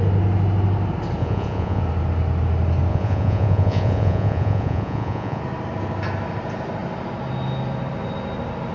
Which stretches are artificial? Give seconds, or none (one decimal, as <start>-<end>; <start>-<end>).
1.2-1.8; 2.9-5.4